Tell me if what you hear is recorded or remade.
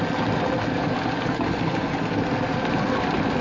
recorded